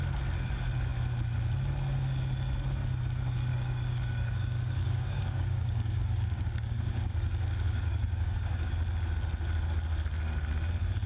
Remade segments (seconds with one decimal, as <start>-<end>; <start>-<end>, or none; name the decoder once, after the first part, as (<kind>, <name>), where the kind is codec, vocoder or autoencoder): 3.5-8.7 (codec, DAC)